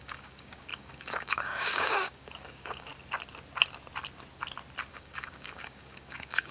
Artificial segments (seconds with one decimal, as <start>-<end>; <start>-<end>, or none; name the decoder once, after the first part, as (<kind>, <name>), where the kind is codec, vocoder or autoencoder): 0.0-2.9 (codec, DAC); 4.9-6.5